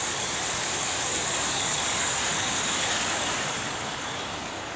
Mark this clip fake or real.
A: fake